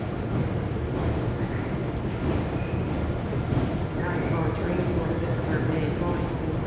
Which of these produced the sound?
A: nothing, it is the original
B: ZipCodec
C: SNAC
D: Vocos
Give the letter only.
A